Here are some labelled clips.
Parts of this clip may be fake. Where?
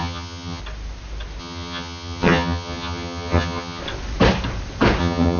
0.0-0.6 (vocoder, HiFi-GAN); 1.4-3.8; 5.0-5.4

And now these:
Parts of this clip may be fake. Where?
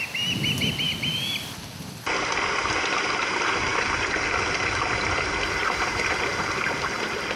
none